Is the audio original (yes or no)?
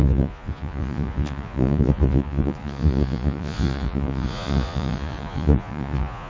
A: no